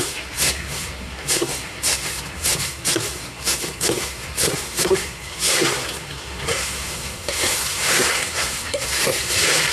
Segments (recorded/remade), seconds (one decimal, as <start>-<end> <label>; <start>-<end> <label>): 0.0-9.7 remade